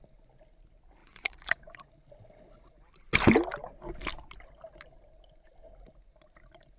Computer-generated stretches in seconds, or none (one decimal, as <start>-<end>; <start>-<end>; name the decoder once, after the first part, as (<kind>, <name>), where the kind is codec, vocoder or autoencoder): 1.0-1.9 (vocoder, Vocos)